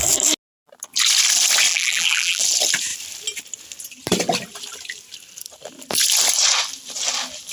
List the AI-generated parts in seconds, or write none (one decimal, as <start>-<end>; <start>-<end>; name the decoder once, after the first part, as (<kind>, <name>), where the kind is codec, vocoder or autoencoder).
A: 1.7-2.4 (vocoder, BigVGAN v2)